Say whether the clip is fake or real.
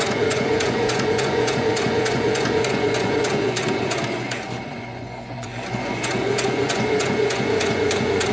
fake